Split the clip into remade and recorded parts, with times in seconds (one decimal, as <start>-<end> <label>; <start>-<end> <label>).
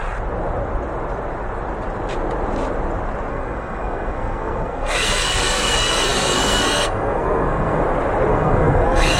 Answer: 0.0-3.3 recorded; 3.3-7.8 remade; 7.8-8.3 recorded; 8.3-9.2 remade